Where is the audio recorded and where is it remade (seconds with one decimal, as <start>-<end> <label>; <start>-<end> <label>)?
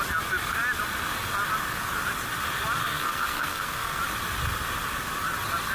0.0-2.8 recorded; 2.8-4.0 remade; 4.0-5.7 recorded